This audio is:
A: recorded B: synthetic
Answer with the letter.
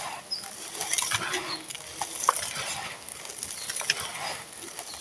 A